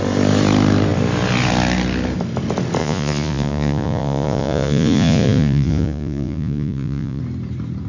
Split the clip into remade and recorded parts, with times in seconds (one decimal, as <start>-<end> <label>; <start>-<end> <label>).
0.0-2.8 recorded; 2.8-7.2 remade; 7.2-7.9 recorded